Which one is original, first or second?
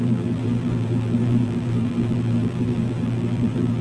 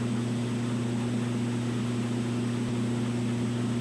second